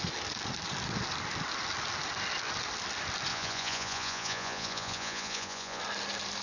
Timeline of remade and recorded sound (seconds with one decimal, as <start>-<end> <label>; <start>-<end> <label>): 0.0-3.3 recorded; 3.3-5.8 remade; 5.8-6.4 recorded